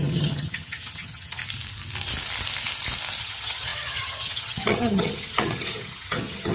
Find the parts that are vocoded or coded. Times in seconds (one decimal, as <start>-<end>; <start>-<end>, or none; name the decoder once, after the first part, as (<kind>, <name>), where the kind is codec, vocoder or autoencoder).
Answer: 0.0-1.4 (vocoder, HiFi-GAN); 3.2-6.5